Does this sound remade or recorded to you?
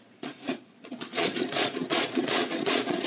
remade